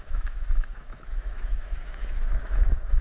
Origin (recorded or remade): remade